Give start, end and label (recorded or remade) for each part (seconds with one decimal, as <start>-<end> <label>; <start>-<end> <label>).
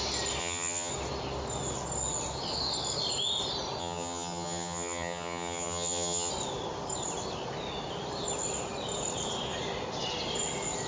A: 0.0-0.4 recorded; 0.4-0.9 remade; 0.9-3.8 recorded; 3.8-6.3 remade; 6.3-10.9 recorded